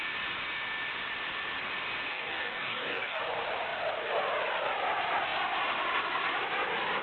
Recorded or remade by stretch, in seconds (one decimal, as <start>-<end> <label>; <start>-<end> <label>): 0.0-2.1 recorded; 2.1-3.2 remade; 3.2-7.0 recorded